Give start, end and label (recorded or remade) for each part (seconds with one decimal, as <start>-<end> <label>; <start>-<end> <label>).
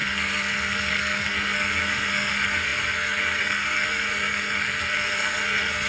0.0-5.9 remade